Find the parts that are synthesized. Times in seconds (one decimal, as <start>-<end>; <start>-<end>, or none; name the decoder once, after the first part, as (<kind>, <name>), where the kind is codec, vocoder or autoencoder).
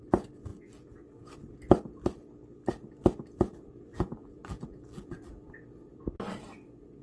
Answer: 0.5-1.2 (vocoder, BigVGAN v2); 3.9-5.5